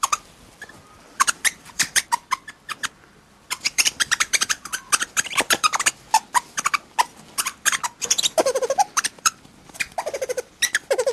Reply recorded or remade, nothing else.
remade